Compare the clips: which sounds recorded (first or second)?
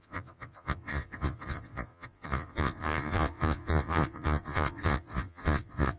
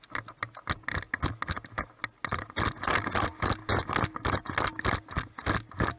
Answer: second